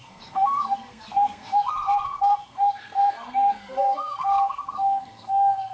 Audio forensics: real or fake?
fake